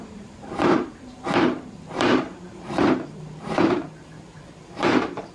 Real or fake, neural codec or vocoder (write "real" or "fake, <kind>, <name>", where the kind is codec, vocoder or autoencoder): fake, vocoder, BigVGAN v2